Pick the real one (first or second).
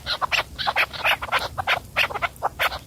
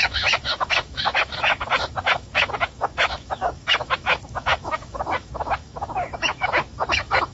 first